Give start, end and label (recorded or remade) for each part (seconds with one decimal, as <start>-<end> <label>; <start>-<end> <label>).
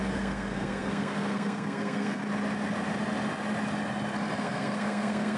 0.0-2.2 remade; 2.2-4.4 recorded; 4.4-5.4 remade